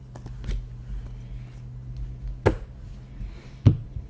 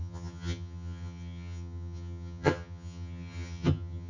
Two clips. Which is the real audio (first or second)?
first